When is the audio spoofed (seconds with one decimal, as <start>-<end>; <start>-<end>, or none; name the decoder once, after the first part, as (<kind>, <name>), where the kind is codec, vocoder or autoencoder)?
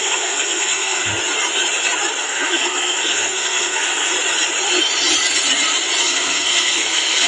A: 0.0-1.1 (codec, SNAC); 2.2-4.1; 6.0-7.3